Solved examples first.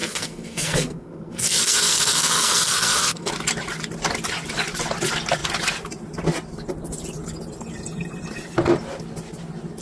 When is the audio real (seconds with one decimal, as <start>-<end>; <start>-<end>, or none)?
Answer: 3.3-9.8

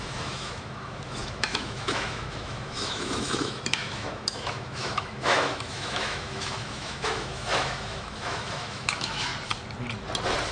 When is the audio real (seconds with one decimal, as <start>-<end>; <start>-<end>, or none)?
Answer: 9.3-10.5

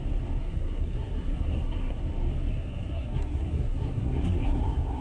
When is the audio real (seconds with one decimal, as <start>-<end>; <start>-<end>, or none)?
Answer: 0.0-0.4; 2.0-2.5

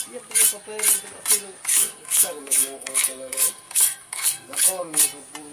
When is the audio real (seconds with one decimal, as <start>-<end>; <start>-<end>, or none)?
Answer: 0.0-1.7; 5.0-5.5